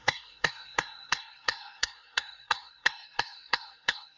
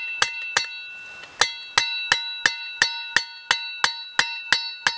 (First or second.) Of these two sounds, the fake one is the first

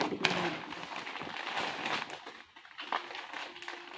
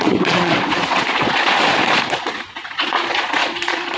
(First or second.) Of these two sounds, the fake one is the second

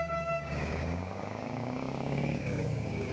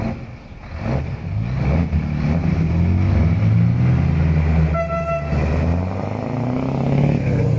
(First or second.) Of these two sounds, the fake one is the first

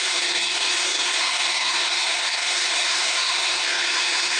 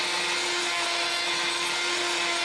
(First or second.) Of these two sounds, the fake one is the first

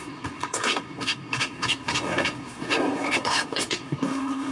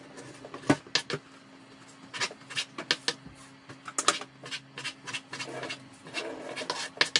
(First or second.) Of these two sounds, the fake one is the first